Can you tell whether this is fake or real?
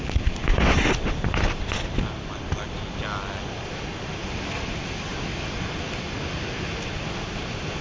real